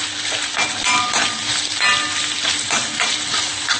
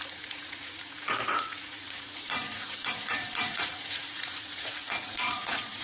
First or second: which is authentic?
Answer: first